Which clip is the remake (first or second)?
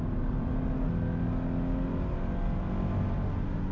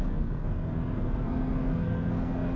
second